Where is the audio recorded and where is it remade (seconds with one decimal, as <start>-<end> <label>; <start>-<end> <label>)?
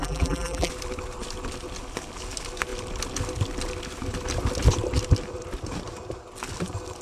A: 0.0-0.7 remade; 0.7-7.0 recorded